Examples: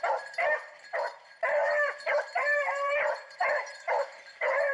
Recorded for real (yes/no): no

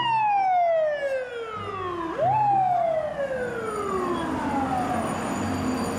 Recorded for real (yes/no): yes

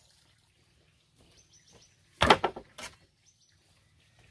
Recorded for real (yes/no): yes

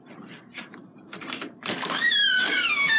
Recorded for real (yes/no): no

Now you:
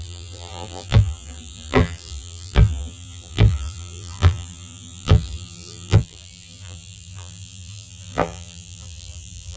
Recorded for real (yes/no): no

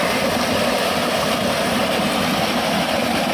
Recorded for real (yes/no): yes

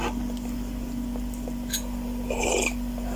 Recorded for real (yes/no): no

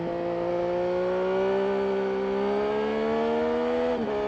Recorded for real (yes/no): yes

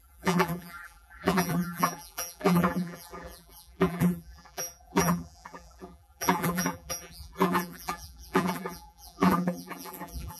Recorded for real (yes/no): no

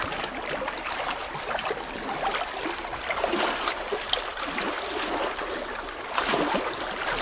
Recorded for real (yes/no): yes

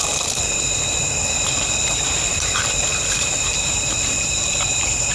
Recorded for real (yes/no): no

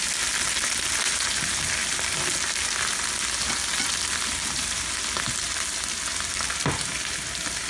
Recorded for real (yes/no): yes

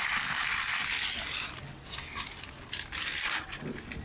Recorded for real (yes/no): yes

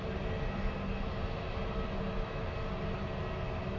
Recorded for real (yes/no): yes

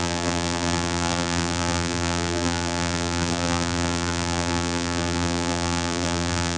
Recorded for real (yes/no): no